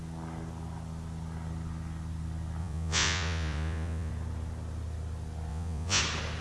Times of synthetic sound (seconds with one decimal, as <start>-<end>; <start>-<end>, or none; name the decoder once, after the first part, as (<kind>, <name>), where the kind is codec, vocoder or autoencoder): 2.6-4.1 (vocoder, Vocos); 5.5-6.0